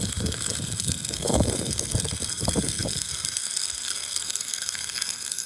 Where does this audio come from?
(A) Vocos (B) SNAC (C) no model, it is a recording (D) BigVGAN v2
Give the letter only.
B